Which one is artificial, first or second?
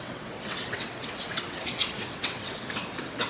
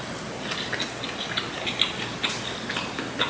first